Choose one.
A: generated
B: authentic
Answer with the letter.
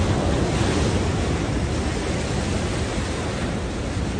B